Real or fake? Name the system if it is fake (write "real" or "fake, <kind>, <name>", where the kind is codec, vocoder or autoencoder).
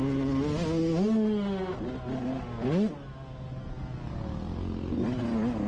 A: real